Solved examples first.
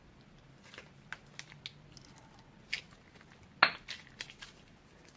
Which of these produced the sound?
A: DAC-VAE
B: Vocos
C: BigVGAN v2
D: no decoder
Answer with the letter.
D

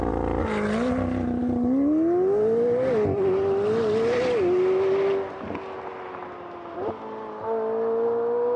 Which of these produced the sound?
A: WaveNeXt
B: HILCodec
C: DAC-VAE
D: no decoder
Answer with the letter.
D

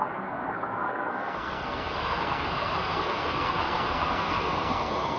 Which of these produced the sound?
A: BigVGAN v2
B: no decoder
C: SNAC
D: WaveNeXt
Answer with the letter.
C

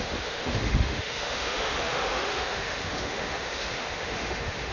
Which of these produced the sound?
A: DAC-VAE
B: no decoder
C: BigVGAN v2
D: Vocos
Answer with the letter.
A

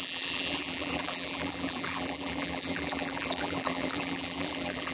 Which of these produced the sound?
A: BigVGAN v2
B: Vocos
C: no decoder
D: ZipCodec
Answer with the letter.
A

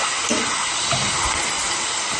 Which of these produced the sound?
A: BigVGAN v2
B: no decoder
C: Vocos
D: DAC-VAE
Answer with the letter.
B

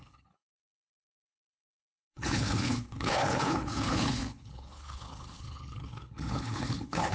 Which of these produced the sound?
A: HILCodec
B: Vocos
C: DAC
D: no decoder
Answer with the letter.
A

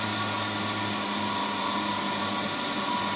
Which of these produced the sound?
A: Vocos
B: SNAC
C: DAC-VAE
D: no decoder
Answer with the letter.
D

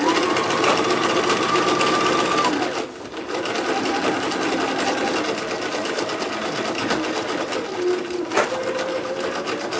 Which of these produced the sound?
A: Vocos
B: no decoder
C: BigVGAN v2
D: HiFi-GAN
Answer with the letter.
B